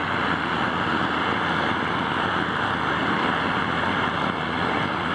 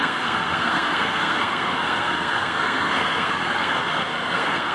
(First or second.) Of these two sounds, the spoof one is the second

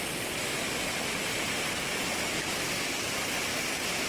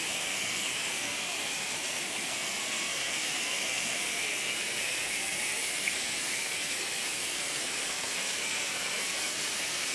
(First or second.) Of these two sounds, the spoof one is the second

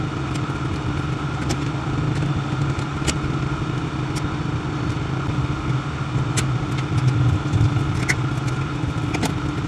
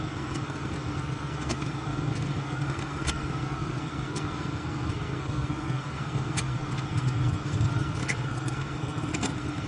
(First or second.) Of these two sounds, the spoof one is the second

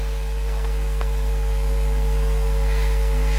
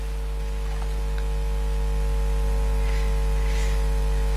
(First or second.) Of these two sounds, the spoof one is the first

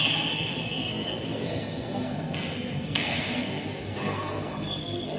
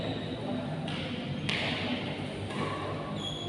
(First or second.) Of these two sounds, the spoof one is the first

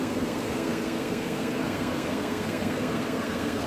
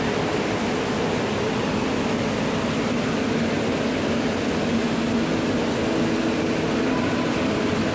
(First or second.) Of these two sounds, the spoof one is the first